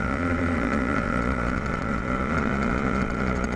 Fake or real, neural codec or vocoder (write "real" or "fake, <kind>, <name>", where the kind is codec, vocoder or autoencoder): fake, vocoder, Vocos